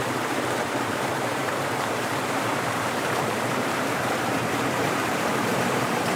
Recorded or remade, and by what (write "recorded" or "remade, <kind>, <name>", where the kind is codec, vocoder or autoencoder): remade, vocoder, BigVGAN v2